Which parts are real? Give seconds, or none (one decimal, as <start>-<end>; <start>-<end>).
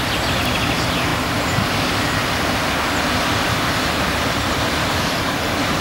0.0-4.8